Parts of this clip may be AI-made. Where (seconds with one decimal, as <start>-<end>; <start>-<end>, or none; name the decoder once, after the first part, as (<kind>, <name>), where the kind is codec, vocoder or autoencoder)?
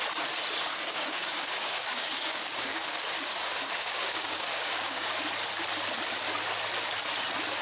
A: 0.7-5.2 (codec, DAC)